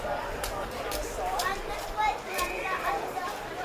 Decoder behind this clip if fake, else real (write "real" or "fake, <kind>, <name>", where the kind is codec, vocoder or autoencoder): fake, vocoder, BigVGAN v2